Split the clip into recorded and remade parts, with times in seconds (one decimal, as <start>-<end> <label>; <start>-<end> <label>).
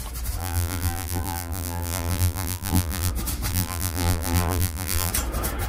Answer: 0.0-0.4 recorded; 0.4-3.1 remade; 3.1-3.5 recorded; 3.5-5.1 remade; 5.1-5.7 recorded